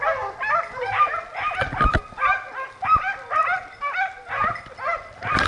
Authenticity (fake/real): real